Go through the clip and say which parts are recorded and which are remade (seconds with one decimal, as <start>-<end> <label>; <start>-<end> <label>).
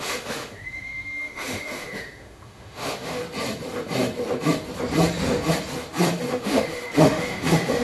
0.0-3.2 remade; 3.2-6.3 recorded; 6.3-7.8 remade